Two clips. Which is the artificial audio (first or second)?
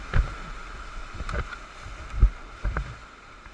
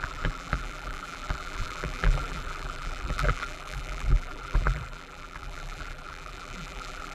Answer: second